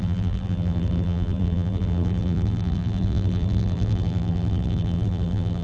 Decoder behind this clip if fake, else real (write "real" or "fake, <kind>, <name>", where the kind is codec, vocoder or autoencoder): fake, vocoder, BigVGAN v2